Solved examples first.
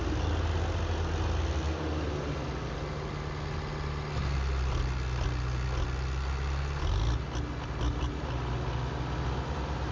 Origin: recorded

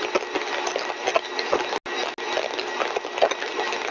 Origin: recorded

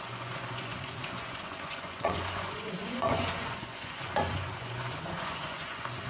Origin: remade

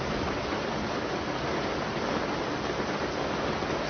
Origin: recorded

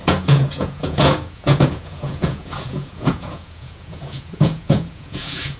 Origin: remade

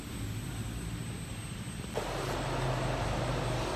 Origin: recorded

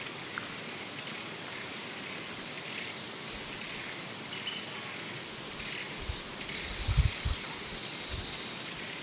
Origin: recorded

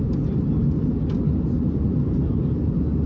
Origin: recorded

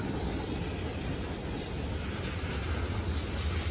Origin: recorded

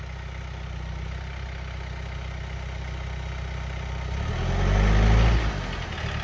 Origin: recorded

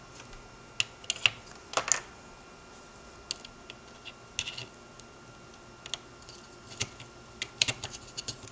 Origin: recorded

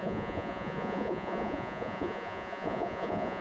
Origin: remade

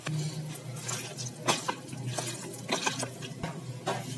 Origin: recorded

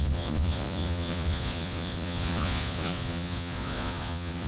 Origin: remade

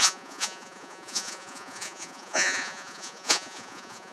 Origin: remade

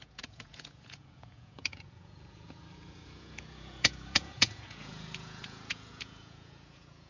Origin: remade